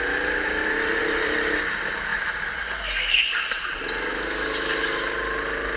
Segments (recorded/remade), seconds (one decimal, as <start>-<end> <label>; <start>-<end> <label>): 0.0-5.8 recorded